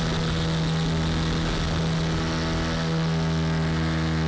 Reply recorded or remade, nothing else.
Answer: recorded